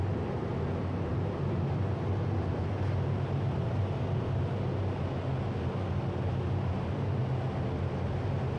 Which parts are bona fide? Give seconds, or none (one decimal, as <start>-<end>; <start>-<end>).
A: 0.0-8.6